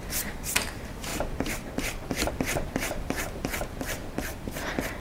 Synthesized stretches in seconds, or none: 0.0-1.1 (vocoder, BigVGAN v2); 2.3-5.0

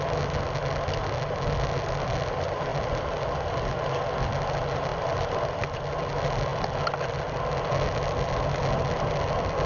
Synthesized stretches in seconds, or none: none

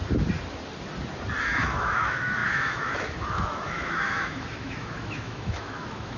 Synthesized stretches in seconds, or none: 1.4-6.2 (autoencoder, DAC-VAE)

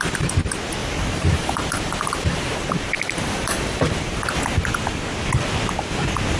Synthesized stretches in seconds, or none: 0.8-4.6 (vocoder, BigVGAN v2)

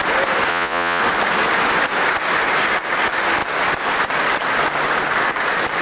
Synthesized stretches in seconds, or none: 0.5-1.0 (vocoder, Vocos)